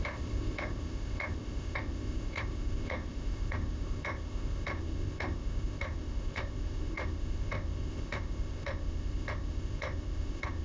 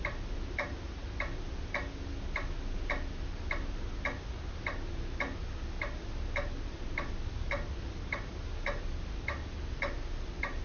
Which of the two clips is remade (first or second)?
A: first